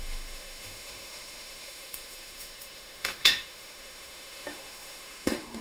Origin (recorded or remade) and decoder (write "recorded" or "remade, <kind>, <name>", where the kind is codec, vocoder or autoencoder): remade, autoencoder, DAC-VAE